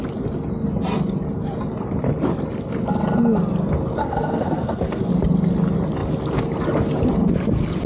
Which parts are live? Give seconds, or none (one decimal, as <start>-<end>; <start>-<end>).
0.0-4.0; 5.1-7.9